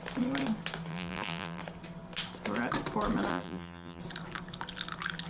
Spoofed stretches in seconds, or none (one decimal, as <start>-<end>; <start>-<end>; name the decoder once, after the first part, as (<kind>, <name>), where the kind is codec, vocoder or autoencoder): 0.9-1.6 (vocoder, BigVGAN v2); 3.3-4.0

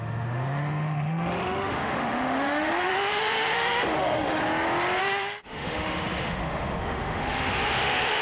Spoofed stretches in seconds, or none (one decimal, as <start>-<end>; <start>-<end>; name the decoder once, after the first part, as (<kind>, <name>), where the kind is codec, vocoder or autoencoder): 0.0-4.4 (autoencoder, DAC-VAE); 5.0-8.2

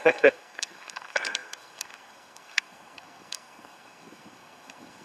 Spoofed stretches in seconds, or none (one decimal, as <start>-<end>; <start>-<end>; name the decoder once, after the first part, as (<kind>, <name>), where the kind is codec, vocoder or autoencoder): 0.0-5.0 (codec, SNAC)

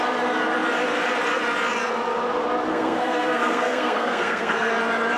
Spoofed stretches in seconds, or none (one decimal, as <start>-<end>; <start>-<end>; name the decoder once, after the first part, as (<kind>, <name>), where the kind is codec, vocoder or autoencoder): 2.7-4.7 (codec, SNAC)

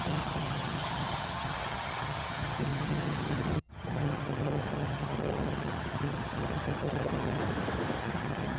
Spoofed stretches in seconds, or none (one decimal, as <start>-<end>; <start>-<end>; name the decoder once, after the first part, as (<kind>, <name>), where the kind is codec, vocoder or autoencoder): 0.0-7.4 (vocoder, HiFi-GAN); 8.0-8.6

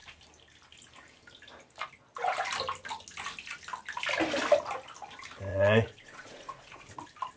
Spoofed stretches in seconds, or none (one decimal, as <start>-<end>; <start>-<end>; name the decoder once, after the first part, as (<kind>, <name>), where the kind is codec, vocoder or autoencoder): 5.5-6.9 (vocoder, Vocos)